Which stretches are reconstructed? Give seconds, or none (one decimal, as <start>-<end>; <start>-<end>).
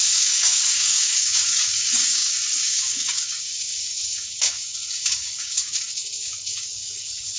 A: 0.0-7.4